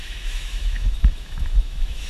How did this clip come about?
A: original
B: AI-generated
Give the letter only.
B